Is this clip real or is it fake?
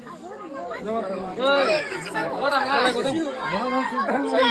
fake